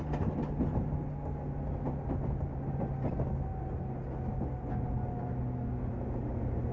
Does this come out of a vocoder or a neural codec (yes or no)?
no